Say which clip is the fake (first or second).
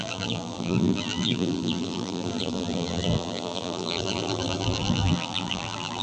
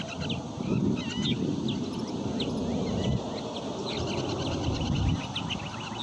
first